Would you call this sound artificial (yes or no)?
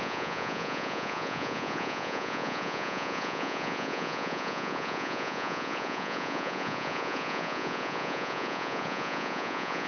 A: yes